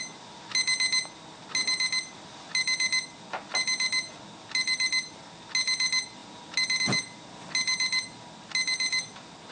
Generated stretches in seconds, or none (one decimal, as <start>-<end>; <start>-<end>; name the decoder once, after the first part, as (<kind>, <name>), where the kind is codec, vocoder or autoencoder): none

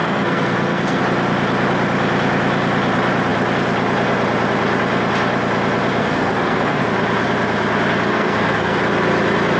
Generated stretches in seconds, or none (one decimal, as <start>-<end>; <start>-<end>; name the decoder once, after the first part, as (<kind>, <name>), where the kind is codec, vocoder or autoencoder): 0.0-1.0 (codec, SNAC); 6.0-6.8; 8.1-8.8

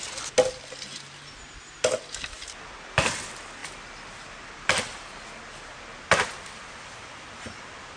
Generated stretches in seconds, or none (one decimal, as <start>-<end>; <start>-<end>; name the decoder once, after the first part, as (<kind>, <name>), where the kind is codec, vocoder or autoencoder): none